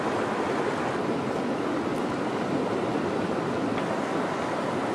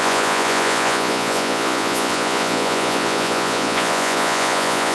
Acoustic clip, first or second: first